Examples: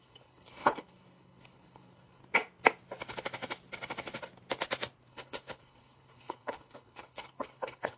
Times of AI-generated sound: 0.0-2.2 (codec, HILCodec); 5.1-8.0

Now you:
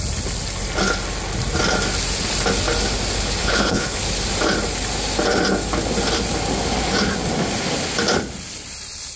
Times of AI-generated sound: 3.4-4.0 (codec, HILCodec)

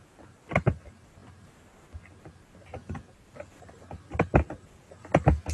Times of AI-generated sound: none

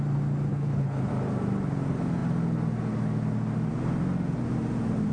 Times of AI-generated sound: 0.5-1.1 (codec, HILCodec)

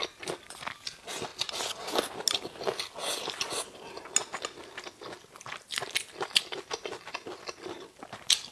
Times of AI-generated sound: none

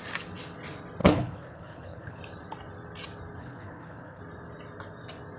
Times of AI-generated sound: 1.0-2.2 (codec, HILCodec); 3.4-4.2

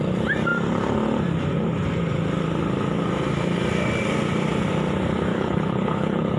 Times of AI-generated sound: 5.3-6.4 (codec, HILCodec)

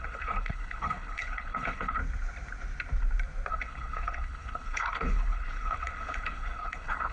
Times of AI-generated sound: 0.0-2.0 (codec, HILCodec); 3.5-7.1